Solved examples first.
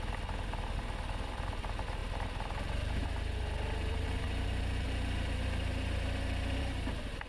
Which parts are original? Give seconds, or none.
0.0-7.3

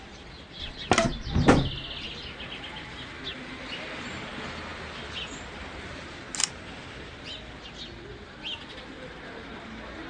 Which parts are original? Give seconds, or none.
0.0-10.1

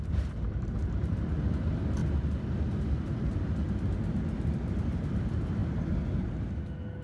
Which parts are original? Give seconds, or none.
0.0-7.0

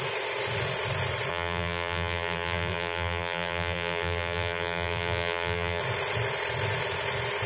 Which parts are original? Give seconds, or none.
0.0-1.3; 5.8-7.5

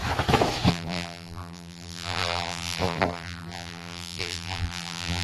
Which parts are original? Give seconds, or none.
0.0-0.7

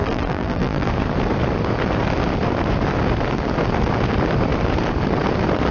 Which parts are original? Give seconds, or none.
0.9-5.7

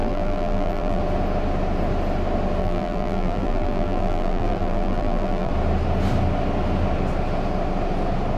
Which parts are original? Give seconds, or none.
1.0-2.6; 5.5-8.4